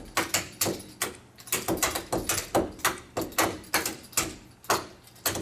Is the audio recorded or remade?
recorded